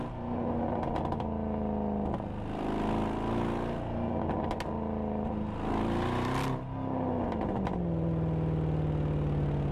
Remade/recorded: recorded